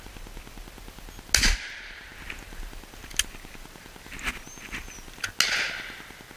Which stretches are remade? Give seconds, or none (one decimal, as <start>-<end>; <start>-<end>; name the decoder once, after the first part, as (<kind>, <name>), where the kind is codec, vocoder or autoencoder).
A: none